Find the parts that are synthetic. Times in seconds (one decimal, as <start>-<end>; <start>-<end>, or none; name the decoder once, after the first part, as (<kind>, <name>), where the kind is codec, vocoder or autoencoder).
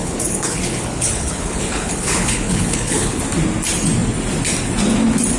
0.0-3.2 (codec, HILCodec)